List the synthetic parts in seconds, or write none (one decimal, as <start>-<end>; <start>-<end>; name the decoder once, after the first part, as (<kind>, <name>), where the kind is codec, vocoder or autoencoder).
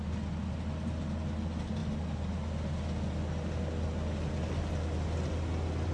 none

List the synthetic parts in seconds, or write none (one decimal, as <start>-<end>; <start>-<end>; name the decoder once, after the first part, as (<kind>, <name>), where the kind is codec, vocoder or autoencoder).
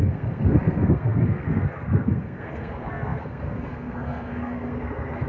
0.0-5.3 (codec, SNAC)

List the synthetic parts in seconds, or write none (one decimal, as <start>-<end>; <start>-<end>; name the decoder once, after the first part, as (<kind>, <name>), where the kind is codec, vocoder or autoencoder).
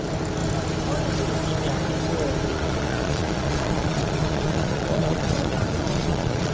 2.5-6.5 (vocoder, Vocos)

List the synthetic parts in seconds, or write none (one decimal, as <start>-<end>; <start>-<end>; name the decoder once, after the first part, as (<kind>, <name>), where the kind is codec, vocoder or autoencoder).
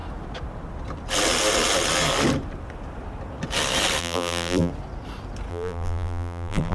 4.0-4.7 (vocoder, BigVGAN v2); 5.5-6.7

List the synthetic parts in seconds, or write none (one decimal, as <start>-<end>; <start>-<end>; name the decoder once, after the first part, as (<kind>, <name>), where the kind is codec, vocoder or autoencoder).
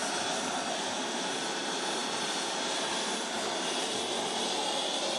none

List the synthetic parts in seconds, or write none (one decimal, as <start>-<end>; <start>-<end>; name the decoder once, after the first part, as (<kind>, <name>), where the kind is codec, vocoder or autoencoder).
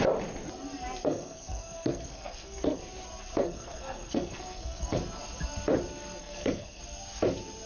1.0-2.8 (codec, SNAC); 3.4-5.0; 6.2-6.8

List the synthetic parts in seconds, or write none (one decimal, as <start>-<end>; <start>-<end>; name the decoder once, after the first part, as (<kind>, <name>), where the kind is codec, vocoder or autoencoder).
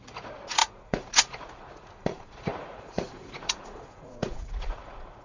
0.0-5.2 (vocoder, Vocos)